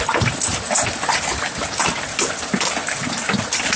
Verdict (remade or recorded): recorded